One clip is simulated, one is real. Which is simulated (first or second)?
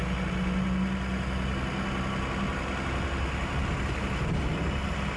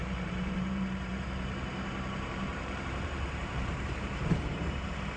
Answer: second